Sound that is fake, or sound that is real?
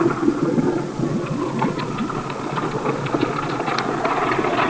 fake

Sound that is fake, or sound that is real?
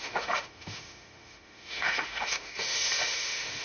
fake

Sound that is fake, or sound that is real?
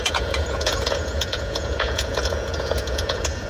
fake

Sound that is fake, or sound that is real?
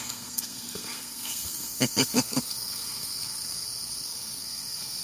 fake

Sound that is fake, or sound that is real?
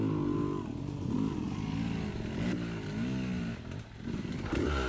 real